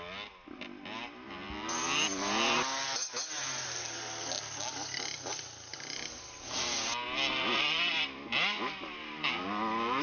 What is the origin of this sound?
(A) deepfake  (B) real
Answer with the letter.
B